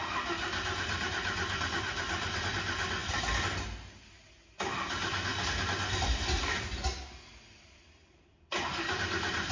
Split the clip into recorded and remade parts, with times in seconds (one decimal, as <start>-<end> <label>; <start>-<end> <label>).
0.0-9.5 recorded